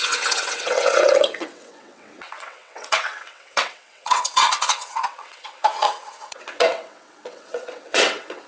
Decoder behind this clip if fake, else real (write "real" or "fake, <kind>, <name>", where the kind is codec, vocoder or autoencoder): fake, vocoder, WaveNeXt